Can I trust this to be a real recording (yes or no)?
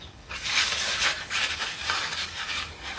no